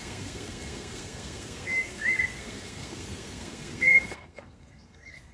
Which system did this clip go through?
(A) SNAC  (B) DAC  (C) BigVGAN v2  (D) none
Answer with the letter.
A